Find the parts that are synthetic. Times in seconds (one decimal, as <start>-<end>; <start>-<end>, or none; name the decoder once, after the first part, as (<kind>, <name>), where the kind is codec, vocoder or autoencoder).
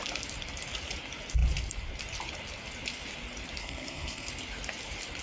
3.6-4.3 (codec, SNAC)